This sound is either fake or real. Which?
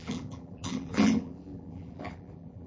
fake